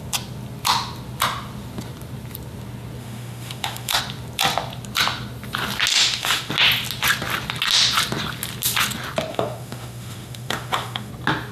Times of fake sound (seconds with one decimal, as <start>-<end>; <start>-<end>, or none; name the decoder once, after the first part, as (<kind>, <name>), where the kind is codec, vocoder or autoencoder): 3.0-4.0 (autoencoder, DAC-VAE); 5.9-6.5; 9.3-11.1